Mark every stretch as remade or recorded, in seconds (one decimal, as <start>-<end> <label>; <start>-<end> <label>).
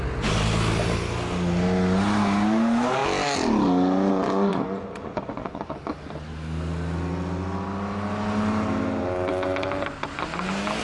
0.0-4.5 recorded; 4.5-5.8 remade; 5.8-10.8 recorded